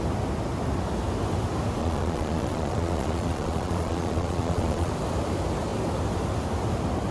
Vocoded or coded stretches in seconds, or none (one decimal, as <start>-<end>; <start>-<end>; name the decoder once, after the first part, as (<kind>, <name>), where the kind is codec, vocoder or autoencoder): 1.8-4.9 (vocoder, Vocos)